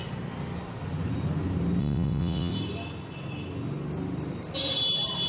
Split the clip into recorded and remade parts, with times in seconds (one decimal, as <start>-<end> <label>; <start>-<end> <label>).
0.0-1.8 recorded; 1.8-2.5 remade; 2.5-5.3 recorded